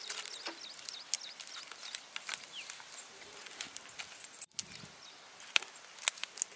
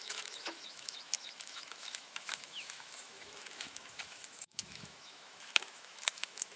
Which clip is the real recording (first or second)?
first